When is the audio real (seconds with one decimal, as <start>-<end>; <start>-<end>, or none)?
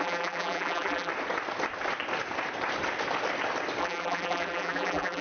1.1-3.8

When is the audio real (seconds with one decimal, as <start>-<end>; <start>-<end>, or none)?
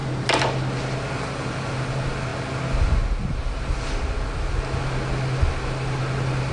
0.0-6.5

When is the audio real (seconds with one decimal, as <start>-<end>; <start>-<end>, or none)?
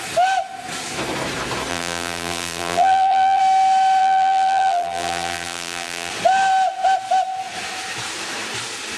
0.0-1.7; 3.4-4.0; 6.1-9.0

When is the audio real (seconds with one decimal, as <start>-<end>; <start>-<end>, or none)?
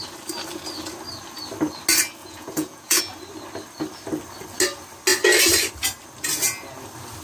0.0-2.2; 3.0-7.2